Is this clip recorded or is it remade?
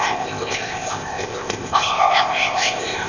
remade